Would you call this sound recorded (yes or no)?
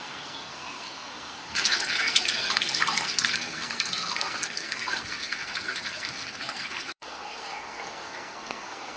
no